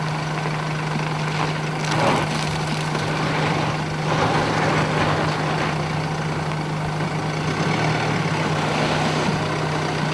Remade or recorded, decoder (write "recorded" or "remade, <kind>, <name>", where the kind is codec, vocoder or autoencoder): recorded